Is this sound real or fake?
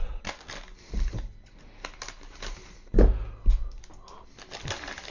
real